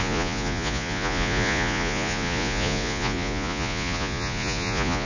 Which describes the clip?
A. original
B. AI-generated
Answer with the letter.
B